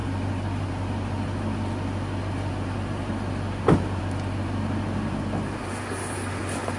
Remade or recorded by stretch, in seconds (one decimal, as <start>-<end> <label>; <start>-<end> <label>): 0.0-6.8 recorded